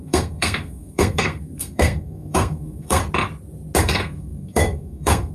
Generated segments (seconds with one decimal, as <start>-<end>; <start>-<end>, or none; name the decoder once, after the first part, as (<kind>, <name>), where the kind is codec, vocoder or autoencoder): 0.0-3.0 (codec, SNAC); 3.8-5.3